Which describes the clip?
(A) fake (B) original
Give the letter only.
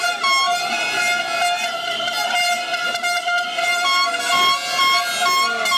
B